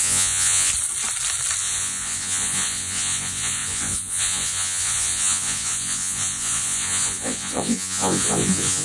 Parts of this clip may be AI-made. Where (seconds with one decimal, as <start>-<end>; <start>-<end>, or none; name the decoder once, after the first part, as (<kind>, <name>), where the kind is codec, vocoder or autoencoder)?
0.0-0.7 (vocoder, Vocos); 1.6-8.8